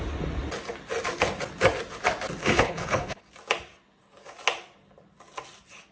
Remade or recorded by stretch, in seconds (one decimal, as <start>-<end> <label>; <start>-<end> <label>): 0.0-2.4 recorded; 2.4-3.2 remade; 3.2-5.9 recorded